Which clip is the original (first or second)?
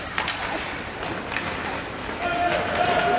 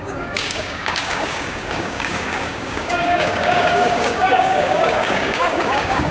first